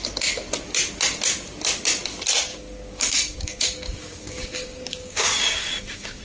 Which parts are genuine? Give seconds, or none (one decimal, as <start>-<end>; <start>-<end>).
0.0-2.5